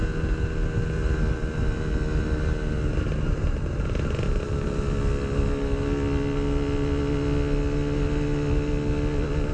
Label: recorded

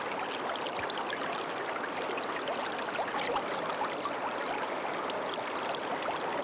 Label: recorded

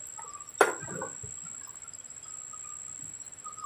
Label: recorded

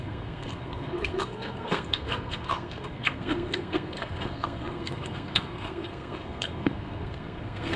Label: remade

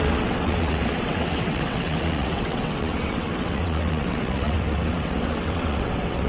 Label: remade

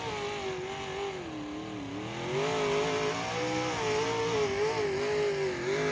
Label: recorded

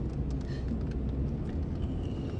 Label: recorded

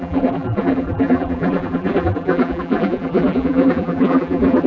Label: remade